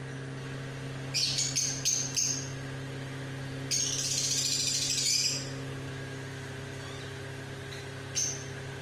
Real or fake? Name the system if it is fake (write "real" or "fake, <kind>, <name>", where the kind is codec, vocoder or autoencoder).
real